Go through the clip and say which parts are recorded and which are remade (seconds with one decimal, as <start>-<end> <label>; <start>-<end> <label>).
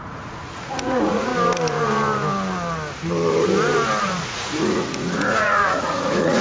0.0-1.3 remade; 1.3-4.0 recorded; 4.0-6.4 remade